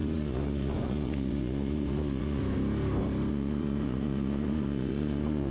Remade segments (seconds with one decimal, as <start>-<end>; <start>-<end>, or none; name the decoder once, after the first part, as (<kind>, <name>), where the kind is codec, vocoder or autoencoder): 0.0-2.4 (vocoder, Vocos); 3.3-5.5